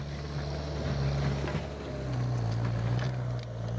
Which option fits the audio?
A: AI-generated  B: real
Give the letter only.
B